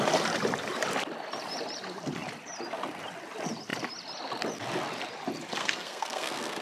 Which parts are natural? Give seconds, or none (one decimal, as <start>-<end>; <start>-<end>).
0.0-5.6